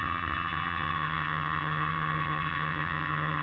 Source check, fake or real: fake